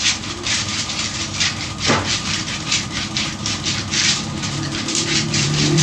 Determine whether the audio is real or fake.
fake